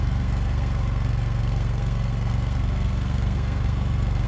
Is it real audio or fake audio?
fake